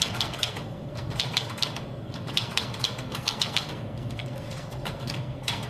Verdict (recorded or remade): remade